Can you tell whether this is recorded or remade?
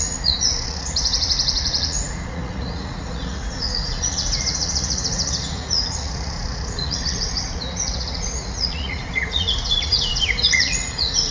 remade